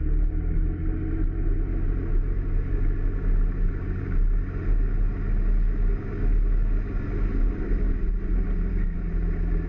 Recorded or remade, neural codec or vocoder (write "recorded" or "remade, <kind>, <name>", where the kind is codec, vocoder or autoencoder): recorded